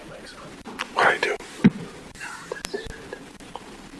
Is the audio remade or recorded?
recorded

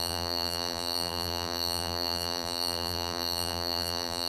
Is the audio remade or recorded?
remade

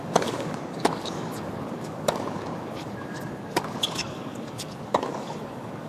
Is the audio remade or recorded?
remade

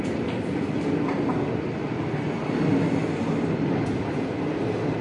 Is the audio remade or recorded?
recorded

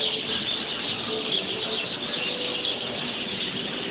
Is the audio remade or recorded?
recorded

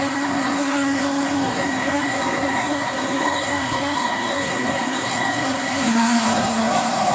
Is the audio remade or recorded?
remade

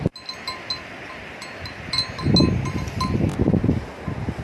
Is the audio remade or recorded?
recorded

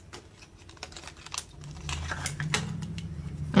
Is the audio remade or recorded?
recorded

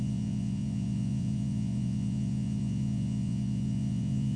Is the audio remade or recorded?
remade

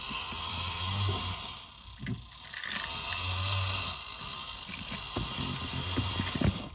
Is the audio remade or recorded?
recorded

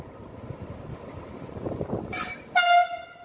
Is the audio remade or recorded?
recorded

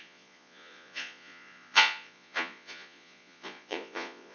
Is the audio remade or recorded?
remade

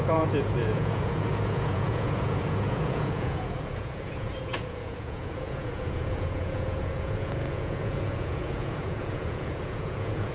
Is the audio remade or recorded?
remade